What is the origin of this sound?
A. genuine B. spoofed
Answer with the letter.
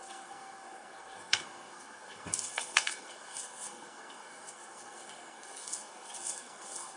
B